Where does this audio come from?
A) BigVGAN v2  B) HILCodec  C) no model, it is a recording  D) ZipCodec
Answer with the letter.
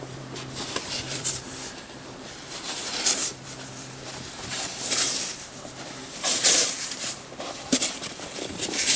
A